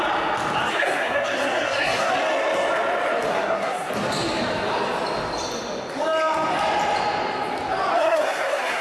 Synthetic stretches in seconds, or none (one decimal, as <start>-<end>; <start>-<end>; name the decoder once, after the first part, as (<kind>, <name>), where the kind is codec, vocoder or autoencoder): 0.7-2.1 (codec, SNAC); 3.3-3.9; 7.9-8.8